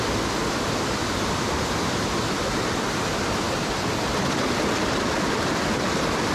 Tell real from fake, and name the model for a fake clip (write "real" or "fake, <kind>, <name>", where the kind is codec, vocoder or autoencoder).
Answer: real